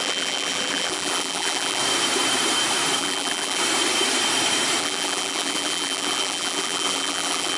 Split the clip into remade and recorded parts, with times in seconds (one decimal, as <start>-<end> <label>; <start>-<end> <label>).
0.0-1.8 remade; 1.8-3.0 recorded; 3.0-3.6 remade; 3.6-4.8 recorded; 4.8-7.6 remade